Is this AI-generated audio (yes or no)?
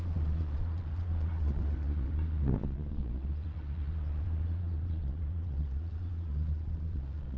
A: yes